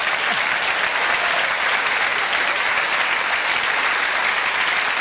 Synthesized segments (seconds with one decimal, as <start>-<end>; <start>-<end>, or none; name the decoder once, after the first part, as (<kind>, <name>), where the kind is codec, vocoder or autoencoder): 0.0-1.7 (vocoder, BigVGAN v2)